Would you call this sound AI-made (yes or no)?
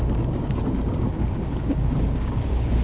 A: yes